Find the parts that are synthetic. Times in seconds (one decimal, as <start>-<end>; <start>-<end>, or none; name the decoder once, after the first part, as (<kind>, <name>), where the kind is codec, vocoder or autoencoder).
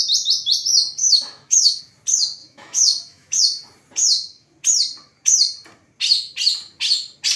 1.0-1.8 (autoencoder, DAC-VAE); 2.4-3.4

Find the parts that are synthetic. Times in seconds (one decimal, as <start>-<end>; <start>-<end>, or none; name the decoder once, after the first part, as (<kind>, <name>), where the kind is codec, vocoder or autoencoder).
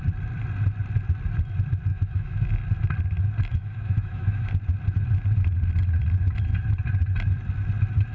1.9-2.5 (autoencoder, DAC-VAE); 3.5-4.5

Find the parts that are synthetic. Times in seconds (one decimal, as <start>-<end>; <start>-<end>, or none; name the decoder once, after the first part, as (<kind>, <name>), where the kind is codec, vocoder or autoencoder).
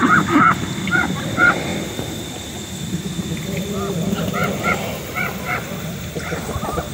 none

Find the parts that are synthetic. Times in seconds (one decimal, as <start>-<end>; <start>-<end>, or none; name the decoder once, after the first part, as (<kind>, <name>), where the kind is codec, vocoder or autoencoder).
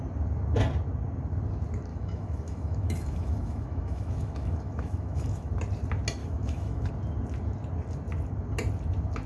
1.9-5.5 (autoencoder, DAC-VAE); 6.2-6.9